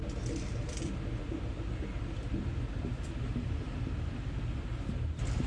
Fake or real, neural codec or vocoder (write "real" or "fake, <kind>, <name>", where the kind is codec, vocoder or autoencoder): fake, vocoder, BigVGAN v2